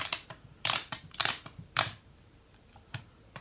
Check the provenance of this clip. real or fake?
fake